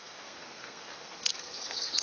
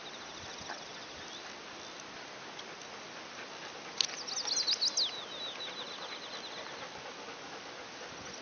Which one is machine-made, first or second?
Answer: first